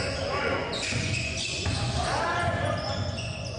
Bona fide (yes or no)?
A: no